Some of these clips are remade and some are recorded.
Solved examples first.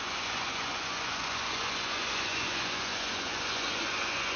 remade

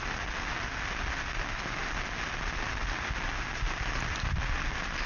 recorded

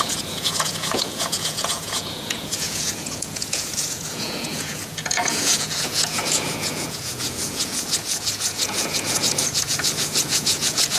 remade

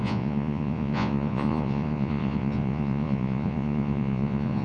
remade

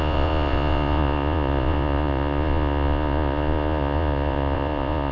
remade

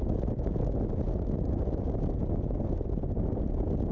recorded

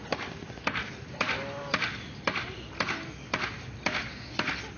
recorded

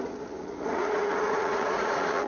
remade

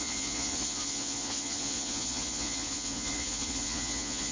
remade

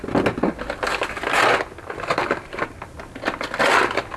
recorded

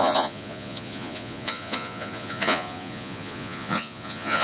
remade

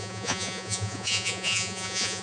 remade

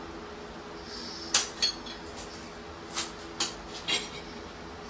recorded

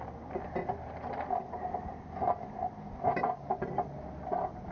recorded